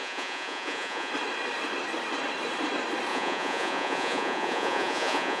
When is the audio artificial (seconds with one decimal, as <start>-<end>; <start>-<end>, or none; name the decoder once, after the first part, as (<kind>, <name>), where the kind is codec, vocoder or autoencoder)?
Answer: 0.0-1.1 (vocoder, Vocos); 3.1-5.4